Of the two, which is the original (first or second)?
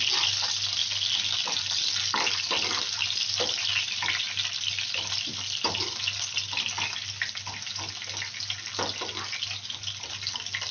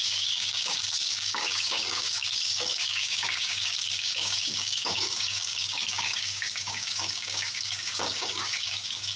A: first